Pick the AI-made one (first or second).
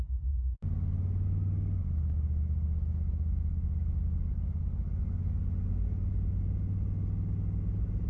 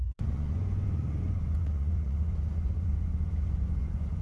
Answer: second